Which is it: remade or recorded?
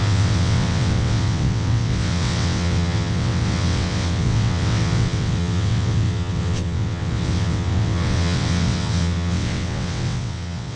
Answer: remade